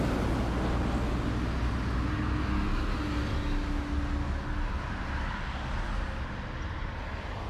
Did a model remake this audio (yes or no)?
no